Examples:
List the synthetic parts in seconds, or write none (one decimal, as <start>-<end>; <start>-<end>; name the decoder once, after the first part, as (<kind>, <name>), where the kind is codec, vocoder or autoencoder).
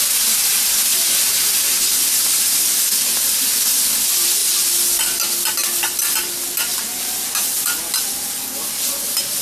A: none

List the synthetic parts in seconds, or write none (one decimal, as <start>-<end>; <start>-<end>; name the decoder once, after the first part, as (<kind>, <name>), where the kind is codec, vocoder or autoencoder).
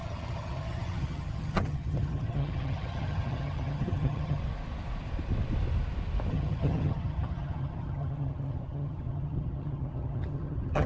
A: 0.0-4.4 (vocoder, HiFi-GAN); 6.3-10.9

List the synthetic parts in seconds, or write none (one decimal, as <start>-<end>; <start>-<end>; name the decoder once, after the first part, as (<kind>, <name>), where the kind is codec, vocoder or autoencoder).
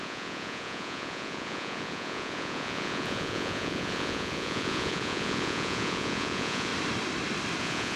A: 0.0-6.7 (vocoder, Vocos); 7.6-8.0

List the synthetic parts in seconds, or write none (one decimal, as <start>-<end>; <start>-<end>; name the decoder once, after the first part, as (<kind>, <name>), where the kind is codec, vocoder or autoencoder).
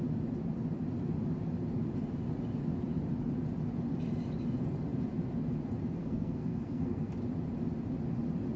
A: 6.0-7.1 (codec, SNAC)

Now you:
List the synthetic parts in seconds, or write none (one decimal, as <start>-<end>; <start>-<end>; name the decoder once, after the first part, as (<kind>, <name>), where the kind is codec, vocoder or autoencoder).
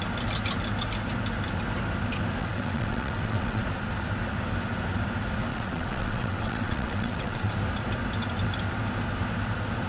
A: 2.4-3.6 (vocoder, WaveNeXt); 5.5-7.5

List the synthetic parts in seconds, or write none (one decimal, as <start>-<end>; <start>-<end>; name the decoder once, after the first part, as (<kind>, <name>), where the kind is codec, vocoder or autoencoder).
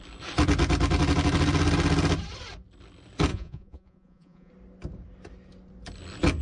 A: 3.3-4.5 (vocoder, Vocos)